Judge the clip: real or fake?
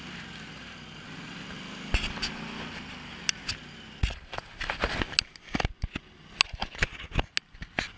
real